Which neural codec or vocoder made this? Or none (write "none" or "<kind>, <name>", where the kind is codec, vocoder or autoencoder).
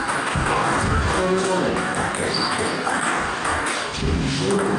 codec, DAC